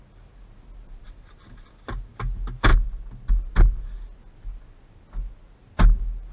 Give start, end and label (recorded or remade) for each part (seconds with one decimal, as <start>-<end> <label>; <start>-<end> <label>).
0.0-6.3 recorded